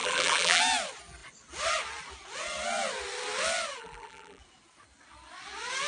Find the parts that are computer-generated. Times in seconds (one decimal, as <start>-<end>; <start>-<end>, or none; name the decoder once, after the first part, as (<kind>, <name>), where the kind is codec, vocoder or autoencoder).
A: 0.0-0.6 (vocoder, BigVGAN v2); 3.8-4.4